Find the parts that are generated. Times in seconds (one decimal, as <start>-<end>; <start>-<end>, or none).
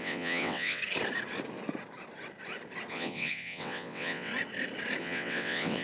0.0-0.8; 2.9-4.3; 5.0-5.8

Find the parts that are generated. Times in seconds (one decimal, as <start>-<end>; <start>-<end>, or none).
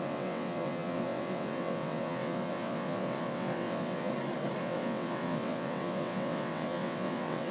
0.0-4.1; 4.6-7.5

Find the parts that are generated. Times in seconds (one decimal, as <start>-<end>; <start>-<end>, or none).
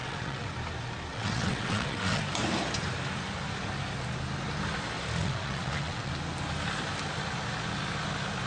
0.0-0.5; 1.1-2.2; 5.2-6.1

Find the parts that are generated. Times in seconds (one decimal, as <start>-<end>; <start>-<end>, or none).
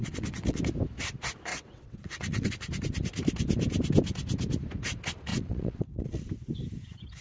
0.0-0.6; 1.5-2.5; 5.3-6.3